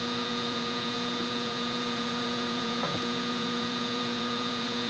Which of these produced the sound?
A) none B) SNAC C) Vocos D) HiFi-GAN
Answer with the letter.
C